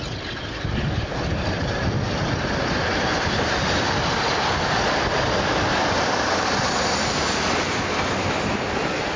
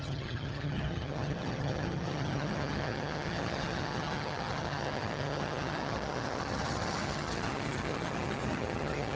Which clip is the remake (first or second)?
second